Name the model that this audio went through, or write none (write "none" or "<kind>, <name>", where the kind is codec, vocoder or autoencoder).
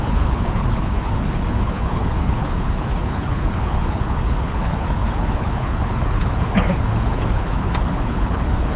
codec, HILCodec